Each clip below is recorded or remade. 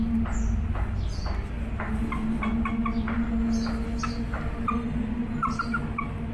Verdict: recorded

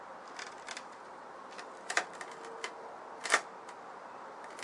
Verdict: recorded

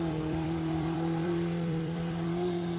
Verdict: remade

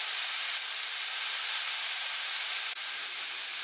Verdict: recorded